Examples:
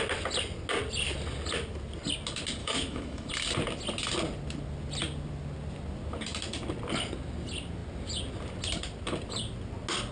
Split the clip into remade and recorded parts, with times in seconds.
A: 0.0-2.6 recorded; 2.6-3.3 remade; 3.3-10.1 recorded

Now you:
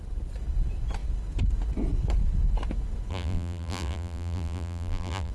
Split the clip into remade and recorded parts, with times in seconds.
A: 0.0-3.1 recorded; 3.1-5.3 remade

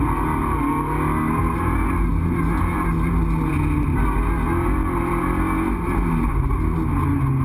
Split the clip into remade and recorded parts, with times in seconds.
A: 0.0-7.4 recorded

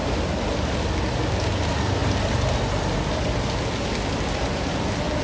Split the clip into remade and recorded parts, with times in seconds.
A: 0.0-5.2 recorded

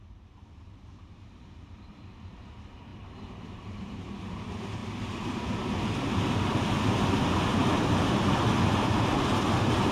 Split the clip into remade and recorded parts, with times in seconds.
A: 0.0-4.8 remade; 4.8-8.8 recorded; 8.8-9.9 remade

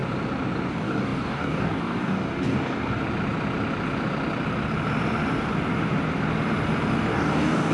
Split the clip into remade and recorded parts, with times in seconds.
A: 0.0-0.7 recorded; 0.7-3.0 remade; 3.0-7.1 recorded; 7.1-7.7 remade

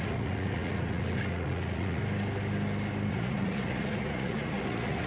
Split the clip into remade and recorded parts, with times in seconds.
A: 0.0-2.0 remade; 2.0-3.1 recorded; 3.1-5.1 remade

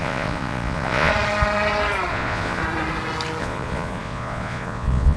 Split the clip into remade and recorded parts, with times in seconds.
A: 0.0-1.1 remade; 1.1-2.1 recorded; 2.1-2.6 remade; 2.6-3.4 recorded; 3.4-5.2 remade